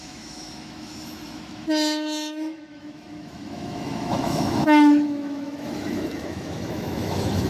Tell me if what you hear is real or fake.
fake